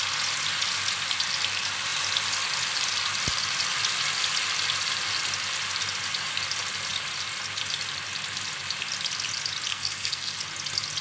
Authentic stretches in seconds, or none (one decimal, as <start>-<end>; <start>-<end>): 0.0-9.7; 10.4-11.0